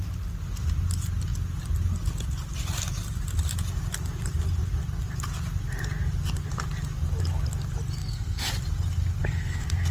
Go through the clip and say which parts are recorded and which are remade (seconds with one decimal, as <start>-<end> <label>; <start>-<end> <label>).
0.0-8.0 recorded; 8.0-8.5 remade; 8.5-9.2 recorded; 9.2-9.9 remade